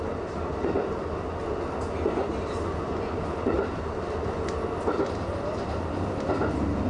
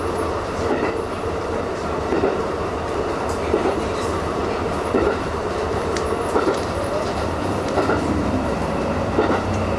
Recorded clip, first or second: first